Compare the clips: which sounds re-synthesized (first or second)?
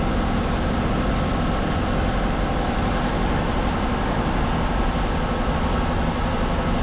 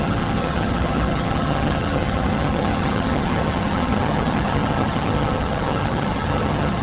second